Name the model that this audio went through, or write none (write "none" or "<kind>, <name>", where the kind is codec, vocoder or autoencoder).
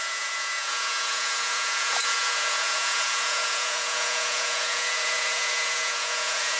vocoder, Vocos